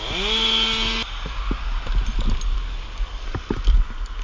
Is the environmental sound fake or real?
real